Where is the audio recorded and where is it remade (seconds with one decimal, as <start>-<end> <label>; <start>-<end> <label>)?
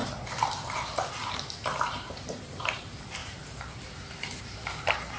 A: 0.0-2.8 remade; 2.8-3.2 recorded; 3.2-5.2 remade